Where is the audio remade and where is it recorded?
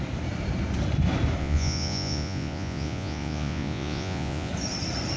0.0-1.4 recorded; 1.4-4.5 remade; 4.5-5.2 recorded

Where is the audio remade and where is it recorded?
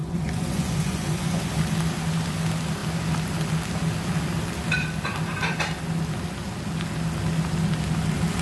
0.0-1.5 remade; 1.5-8.4 recorded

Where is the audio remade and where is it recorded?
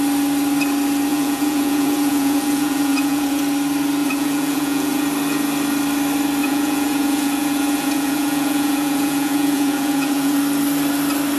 0.0-1.1 recorded; 1.1-3.4 remade; 3.4-4.0 recorded; 4.0-5.1 remade; 5.1-6.4 recorded; 6.4-10.4 remade; 10.4-11.4 recorded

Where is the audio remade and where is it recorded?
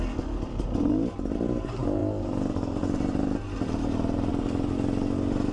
0.0-5.5 recorded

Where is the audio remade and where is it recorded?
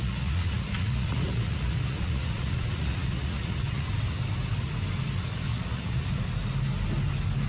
0.0-3.9 remade; 3.9-5.5 recorded; 5.5-6.2 remade; 6.2-7.5 recorded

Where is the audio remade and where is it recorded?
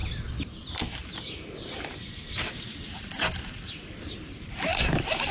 0.0-5.3 recorded